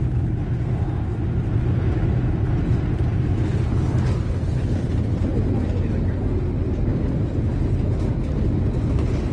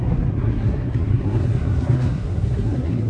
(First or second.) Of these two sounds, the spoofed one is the second